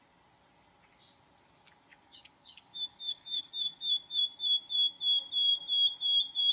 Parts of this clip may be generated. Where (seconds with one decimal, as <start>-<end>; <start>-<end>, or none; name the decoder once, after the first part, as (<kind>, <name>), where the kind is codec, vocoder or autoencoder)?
1.9-4.2 (codec, DAC)